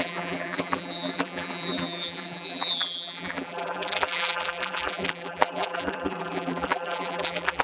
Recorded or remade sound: remade